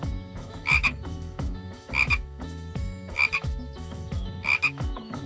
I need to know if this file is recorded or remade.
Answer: remade